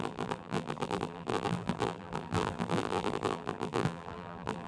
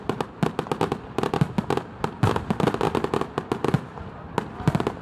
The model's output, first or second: first